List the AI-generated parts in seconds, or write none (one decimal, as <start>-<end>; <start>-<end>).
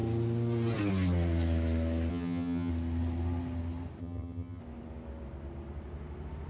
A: 2.1-2.7; 4.0-4.6